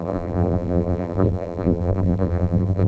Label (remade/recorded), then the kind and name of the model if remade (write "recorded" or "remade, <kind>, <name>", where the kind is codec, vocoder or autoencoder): remade, vocoder, BigVGAN v2